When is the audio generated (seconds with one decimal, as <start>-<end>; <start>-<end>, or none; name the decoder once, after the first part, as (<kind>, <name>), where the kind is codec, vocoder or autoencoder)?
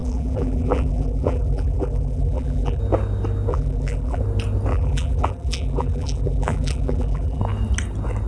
0.0-2.8 (vocoder, BigVGAN v2); 3.5-4.2; 4.7-7.4